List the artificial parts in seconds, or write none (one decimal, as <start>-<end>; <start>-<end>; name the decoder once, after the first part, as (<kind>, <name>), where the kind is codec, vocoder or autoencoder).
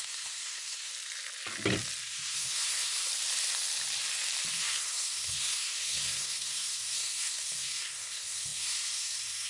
0.0-0.9 (codec, SNAC); 2.0-3.1; 4.5-9.5